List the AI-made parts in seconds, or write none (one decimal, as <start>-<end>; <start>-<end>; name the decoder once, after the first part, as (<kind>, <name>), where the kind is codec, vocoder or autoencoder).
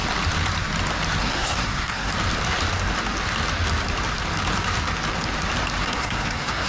1.2-2.1 (codec, SNAC); 5.8-6.7